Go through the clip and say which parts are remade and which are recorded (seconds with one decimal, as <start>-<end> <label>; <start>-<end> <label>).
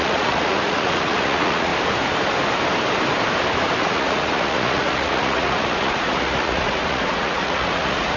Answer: 0.0-1.7 remade; 1.7-3.8 recorded; 3.8-8.2 remade